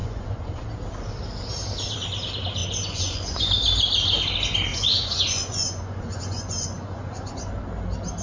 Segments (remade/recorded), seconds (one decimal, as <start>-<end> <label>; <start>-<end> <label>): 0.0-0.6 remade; 0.6-2.6 recorded; 2.6-3.5 remade; 3.5-4.7 recorded; 4.7-7.5 remade; 7.5-8.2 recorded